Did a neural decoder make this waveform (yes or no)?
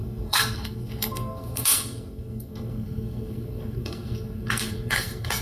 yes